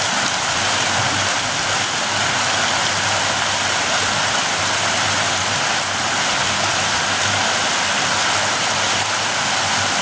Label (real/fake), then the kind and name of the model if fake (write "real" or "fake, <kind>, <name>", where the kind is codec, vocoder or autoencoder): real